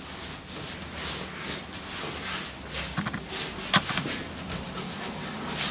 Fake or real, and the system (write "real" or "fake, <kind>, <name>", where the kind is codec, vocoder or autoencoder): real